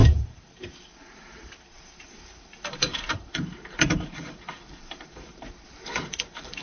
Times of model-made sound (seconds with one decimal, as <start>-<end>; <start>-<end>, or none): 0.0-6.6